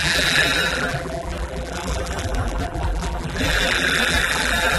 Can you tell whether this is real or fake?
fake